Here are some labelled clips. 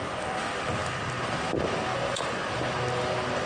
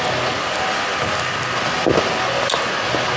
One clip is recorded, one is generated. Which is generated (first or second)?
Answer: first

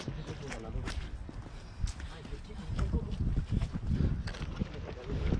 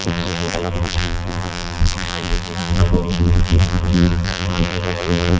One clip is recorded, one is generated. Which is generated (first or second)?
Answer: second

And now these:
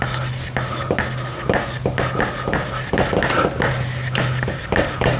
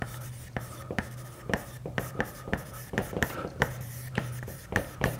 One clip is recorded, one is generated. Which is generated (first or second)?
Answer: second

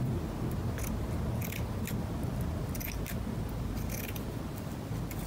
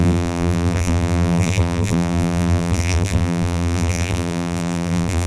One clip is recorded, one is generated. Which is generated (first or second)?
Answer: second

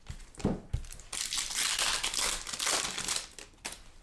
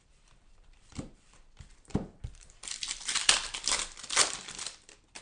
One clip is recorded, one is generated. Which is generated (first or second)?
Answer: second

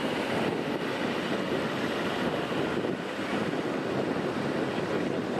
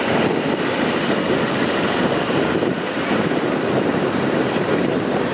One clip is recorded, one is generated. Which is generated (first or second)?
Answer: second